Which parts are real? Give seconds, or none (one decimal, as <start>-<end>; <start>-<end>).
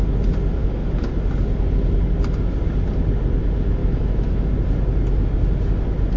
0.0-0.6; 1.1-3.8; 4.5-6.2